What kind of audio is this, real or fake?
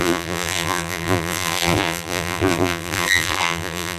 fake